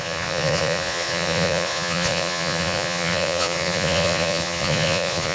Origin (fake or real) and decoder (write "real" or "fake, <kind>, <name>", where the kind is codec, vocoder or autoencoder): fake, vocoder, Vocos